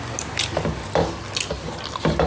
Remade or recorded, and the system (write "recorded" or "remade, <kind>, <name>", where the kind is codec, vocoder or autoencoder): recorded